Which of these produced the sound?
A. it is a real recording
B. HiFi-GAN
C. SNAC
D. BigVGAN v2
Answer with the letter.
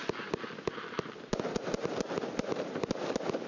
A